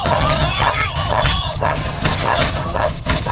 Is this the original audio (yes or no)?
no